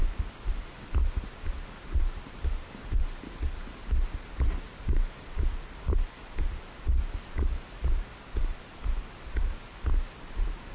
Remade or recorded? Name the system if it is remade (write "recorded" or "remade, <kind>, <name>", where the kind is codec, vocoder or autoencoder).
recorded